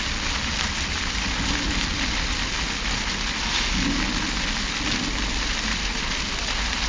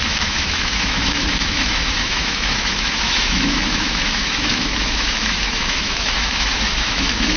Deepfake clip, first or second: second